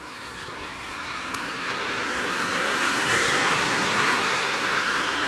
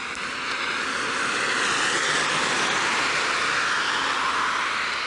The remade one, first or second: first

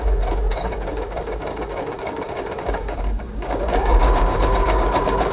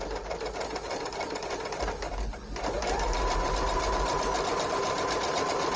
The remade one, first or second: first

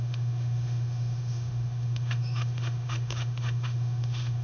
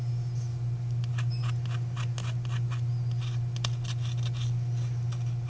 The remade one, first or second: first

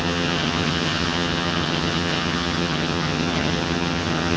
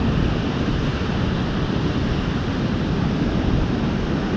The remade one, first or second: first